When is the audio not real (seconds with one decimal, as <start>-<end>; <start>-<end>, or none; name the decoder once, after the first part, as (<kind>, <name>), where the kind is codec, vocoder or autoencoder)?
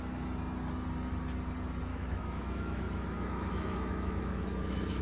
1.9-5.0 (autoencoder, DAC-VAE)